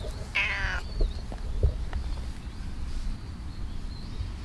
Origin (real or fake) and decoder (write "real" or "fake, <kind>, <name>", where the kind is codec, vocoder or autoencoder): real